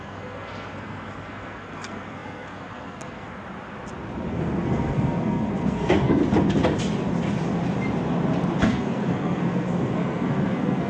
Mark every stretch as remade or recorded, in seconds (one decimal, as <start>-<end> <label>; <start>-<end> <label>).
0.0-3.4 remade; 3.4-4.3 recorded; 4.3-6.2 remade; 6.2-8.6 recorded; 8.6-10.9 remade